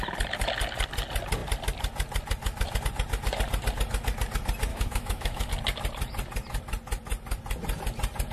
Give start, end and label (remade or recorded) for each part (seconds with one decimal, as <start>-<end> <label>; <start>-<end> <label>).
0.0-4.7 recorded; 4.7-5.5 remade; 5.5-8.3 recorded